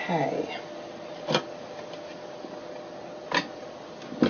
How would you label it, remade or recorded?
recorded